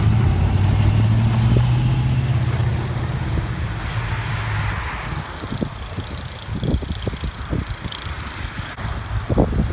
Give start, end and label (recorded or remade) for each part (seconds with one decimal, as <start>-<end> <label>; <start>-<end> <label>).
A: 0.0-9.7 recorded